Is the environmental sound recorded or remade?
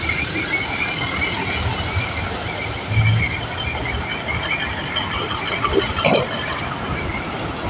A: recorded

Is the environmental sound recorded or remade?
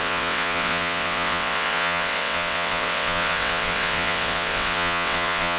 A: remade